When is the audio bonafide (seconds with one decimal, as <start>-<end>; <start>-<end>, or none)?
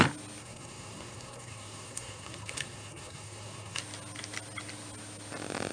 0.0-0.4; 3.8-5.7